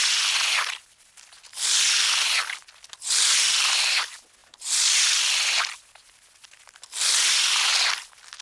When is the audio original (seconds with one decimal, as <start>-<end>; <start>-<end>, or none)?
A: 0.0-8.4